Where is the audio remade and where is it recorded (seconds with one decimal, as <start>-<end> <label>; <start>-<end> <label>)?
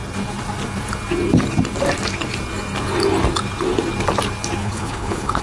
0.0-4.6 recorded; 4.6-5.4 remade